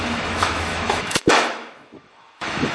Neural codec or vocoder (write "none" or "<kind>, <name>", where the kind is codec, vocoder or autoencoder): autoencoder, DAC-VAE